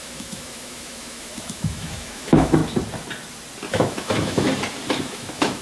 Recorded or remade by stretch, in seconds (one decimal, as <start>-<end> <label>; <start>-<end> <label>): 0.0-2.6 remade; 2.6-3.7 recorded; 3.7-4.5 remade; 4.5-5.0 recorded; 5.0-5.6 remade